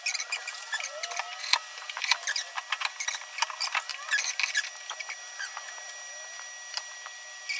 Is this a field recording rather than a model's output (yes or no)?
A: yes